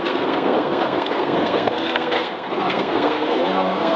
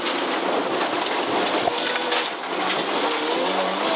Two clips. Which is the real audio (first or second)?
second